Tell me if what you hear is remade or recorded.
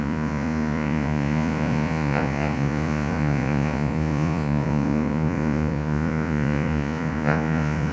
remade